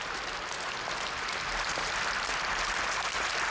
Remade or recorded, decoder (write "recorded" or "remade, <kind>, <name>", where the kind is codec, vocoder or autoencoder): recorded